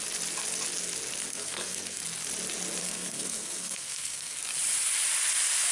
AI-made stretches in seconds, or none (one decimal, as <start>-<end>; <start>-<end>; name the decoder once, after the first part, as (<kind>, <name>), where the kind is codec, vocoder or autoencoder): 1.3-2.0 (codec, SNAC); 2.8-4.4